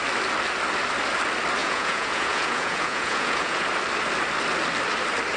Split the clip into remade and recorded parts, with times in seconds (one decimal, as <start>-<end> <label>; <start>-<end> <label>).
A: 0.0-1.6 recorded; 1.6-3.7 remade; 3.7-5.4 recorded